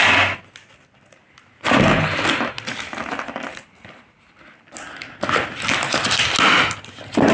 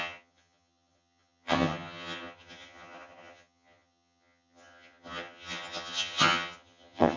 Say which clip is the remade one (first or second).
second